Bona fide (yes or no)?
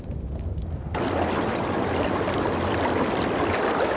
yes